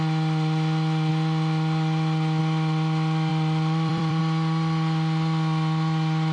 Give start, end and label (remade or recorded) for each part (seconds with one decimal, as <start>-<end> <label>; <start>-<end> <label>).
0.0-3.3 recorded; 3.3-4.2 remade; 4.2-6.3 recorded